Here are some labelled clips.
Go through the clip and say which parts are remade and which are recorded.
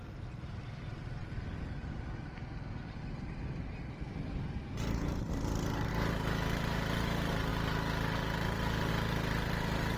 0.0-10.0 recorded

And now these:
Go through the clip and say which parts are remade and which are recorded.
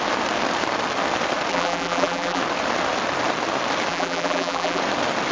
0.0-1.5 recorded; 1.5-2.4 remade; 2.4-3.9 recorded; 3.9-4.8 remade; 4.8-5.3 recorded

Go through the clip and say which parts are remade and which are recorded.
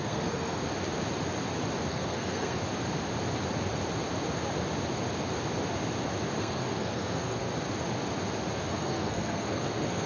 0.0-0.6 remade; 0.6-1.9 recorded; 1.9-2.6 remade; 2.6-6.4 recorded; 6.4-7.5 remade; 7.5-8.7 recorded; 8.7-10.1 remade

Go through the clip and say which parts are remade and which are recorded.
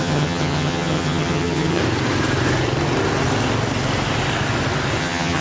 0.0-1.8 remade; 1.8-5.0 recorded; 5.0-5.4 remade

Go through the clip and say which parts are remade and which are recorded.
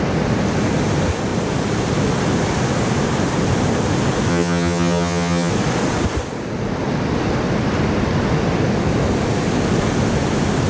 0.0-4.3 recorded; 4.3-5.5 remade; 5.5-10.7 recorded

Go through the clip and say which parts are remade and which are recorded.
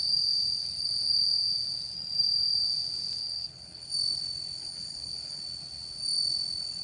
0.0-3.2 recorded; 3.2-3.9 remade; 3.9-4.6 recorded; 4.6-5.4 remade; 5.4-6.8 recorded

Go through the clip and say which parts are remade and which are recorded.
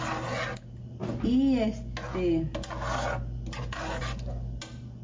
0.0-5.0 recorded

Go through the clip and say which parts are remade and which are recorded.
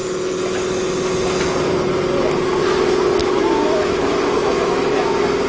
0.0-3.2 recorded; 3.2-5.0 remade; 5.0-5.5 recorded